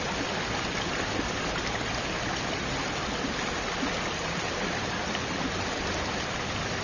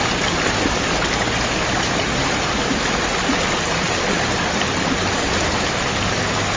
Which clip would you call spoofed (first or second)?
first